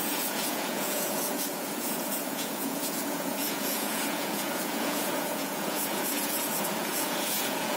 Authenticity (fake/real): fake